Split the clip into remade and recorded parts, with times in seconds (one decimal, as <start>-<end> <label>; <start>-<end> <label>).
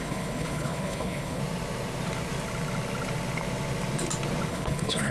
0.0-1.4 remade; 1.4-4.5 recorded; 4.5-5.1 remade